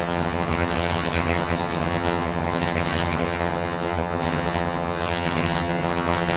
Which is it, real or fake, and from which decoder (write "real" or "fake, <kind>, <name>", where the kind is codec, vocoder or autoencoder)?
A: fake, vocoder, HiFi-GAN